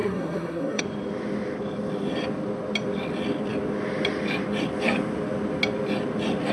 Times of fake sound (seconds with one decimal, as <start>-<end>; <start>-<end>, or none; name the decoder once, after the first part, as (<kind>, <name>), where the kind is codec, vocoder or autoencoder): 0.0-0.8 (codec, SNAC)